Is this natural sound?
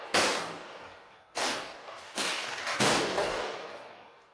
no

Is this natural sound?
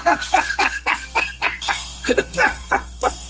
no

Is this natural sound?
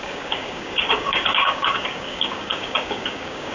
no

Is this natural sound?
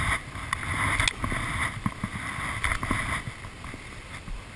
yes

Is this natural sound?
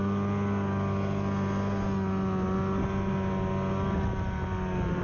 yes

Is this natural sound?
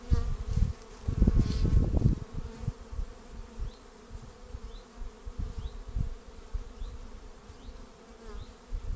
yes